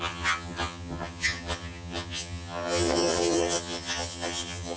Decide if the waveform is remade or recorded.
remade